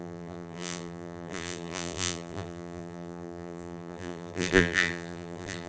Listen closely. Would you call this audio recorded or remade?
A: remade